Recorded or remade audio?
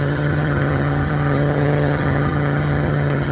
remade